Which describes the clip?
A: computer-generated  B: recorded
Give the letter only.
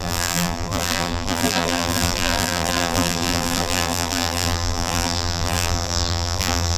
A